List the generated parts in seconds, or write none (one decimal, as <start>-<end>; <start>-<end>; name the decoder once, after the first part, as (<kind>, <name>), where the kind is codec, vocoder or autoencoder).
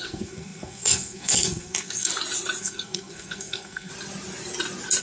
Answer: 0.0-2.1 (codec, SNAC); 2.6-3.9